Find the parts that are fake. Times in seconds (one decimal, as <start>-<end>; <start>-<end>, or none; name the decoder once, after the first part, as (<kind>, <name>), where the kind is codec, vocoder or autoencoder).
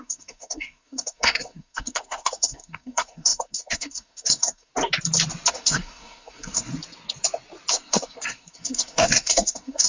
0.0-4.7 (codec, SNAC); 5.5-6.7; 7.7-9.9